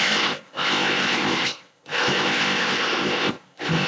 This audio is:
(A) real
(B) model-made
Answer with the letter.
B